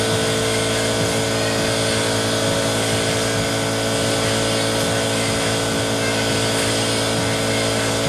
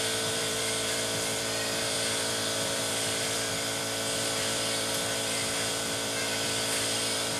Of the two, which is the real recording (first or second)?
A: first